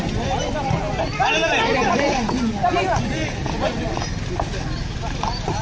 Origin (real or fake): real